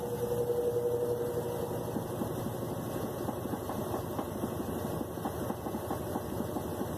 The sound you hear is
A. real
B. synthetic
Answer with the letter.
A